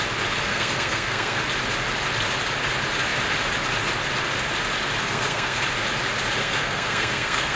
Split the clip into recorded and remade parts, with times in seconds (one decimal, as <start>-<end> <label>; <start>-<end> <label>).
0.0-0.5 recorded; 0.5-1.4 remade; 1.4-5.0 recorded; 5.0-5.6 remade; 5.6-6.4 recorded; 6.4-7.6 remade